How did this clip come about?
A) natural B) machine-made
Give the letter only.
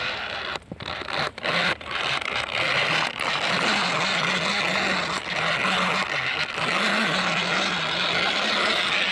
A